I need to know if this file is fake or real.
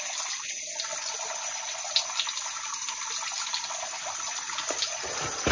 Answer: real